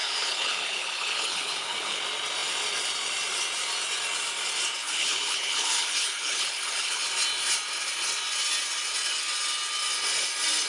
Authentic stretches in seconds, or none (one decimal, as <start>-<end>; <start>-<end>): 2.0-4.8; 7.0-10.7